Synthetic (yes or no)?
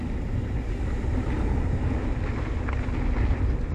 no